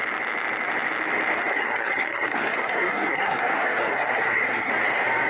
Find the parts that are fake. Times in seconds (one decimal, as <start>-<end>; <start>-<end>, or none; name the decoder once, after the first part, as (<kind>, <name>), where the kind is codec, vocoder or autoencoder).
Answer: 1.5-4.7 (codec, SNAC)

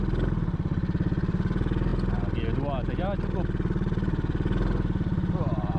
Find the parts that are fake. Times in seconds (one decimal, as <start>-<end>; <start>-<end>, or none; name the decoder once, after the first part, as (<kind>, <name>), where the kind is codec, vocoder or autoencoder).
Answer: none

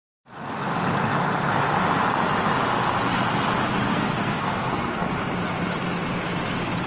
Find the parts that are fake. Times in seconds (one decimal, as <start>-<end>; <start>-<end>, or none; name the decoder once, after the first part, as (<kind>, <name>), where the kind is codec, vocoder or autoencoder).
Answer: 3.9-5.1 (codec, SNAC)

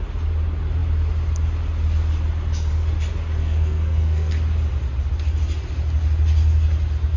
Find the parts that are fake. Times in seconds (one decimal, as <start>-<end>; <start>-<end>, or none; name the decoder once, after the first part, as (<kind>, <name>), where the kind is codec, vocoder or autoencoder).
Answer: 3.4-4.3 (codec, SNAC)

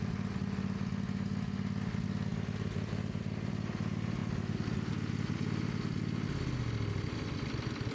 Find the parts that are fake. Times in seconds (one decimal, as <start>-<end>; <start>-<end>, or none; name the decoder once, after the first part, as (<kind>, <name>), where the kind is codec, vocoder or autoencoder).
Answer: none

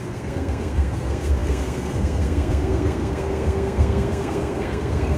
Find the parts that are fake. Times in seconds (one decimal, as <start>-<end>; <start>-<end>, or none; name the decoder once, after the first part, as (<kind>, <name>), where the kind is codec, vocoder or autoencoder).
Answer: 0.0-5.2 (codec, SNAC)

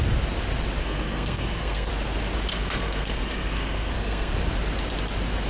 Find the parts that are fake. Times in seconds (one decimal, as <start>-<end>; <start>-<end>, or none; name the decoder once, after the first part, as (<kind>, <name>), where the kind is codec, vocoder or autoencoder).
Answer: 0.8-1.9 (codec, SNAC); 2.5-4.3

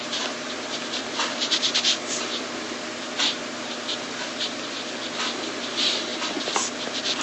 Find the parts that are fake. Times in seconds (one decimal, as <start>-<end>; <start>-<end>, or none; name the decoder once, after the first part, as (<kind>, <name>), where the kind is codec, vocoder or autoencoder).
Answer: none